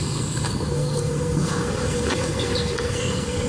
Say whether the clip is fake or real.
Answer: fake